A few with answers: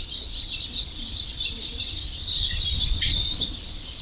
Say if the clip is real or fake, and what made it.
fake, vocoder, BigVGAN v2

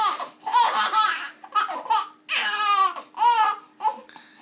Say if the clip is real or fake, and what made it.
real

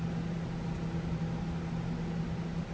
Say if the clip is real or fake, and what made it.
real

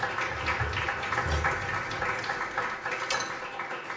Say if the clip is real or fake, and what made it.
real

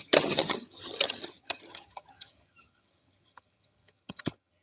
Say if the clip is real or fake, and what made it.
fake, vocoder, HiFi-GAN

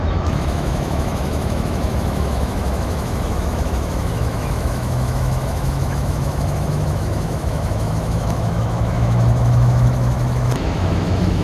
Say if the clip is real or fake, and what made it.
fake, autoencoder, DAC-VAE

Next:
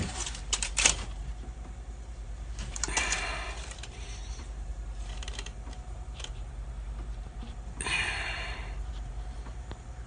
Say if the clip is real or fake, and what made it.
fake, vocoder, BigVGAN v2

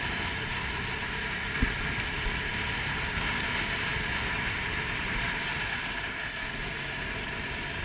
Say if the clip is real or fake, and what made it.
real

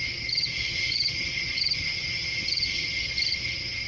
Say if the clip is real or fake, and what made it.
fake, vocoder, HiFi-GAN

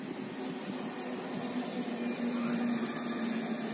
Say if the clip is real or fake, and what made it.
real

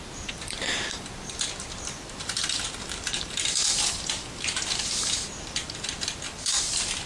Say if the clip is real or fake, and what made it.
fake, vocoder, BigVGAN v2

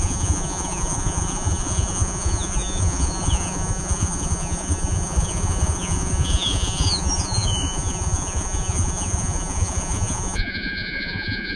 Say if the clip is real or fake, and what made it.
fake, vocoder, Vocos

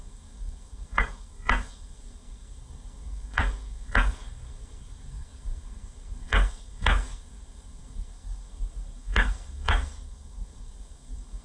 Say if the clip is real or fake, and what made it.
fake, codec, SNAC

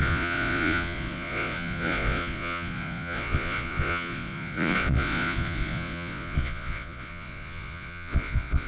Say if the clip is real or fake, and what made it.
fake, vocoder, Vocos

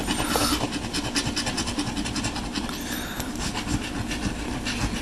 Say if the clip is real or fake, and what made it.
real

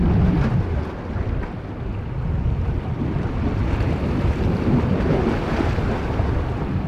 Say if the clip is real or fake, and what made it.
real